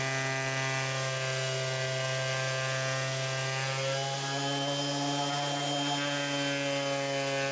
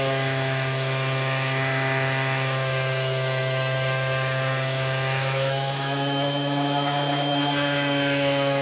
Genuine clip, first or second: first